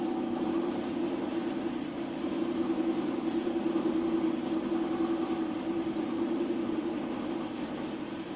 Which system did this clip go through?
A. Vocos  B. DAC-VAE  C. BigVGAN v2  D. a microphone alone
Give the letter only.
C